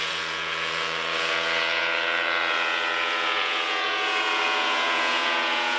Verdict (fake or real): fake